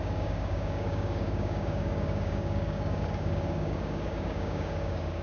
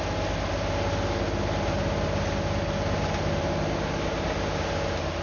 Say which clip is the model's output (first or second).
first